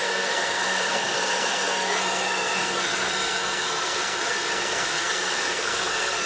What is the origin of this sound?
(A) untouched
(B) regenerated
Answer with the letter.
B